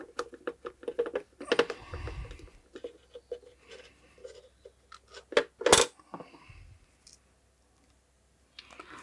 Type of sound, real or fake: real